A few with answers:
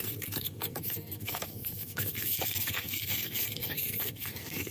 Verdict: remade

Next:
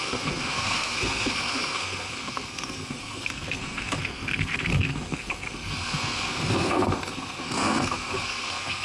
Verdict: remade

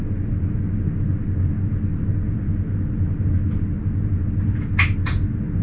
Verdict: recorded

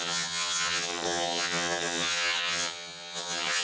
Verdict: remade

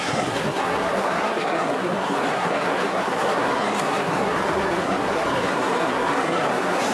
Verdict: remade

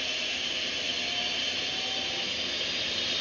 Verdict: recorded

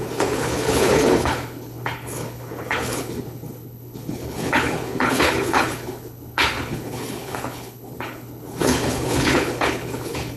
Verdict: remade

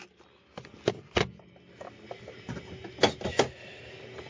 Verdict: recorded